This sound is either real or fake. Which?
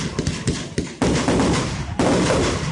real